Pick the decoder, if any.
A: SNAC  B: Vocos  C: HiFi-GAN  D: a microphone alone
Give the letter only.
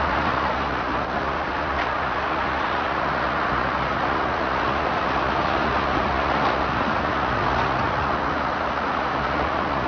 B